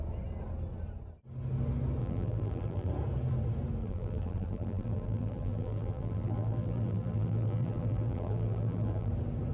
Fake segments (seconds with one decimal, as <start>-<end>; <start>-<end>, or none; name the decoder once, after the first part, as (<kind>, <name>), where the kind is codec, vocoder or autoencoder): 2.0-2.9 (vocoder, BigVGAN v2); 3.8-9.1